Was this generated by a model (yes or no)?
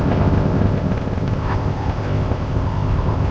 yes